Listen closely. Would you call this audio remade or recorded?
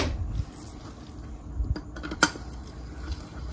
recorded